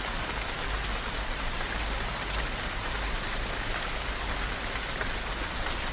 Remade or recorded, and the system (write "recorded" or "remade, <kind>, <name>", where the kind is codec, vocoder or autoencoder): recorded